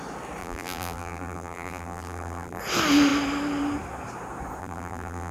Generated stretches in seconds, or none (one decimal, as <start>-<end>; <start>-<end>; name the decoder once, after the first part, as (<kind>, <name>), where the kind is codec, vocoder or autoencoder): 0.4-2.6 (vocoder, BigVGAN v2); 4.6-5.3